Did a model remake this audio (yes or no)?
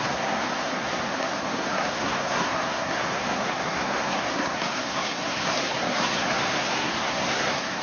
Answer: yes